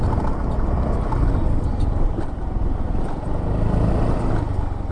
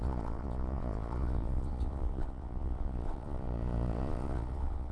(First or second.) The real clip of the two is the first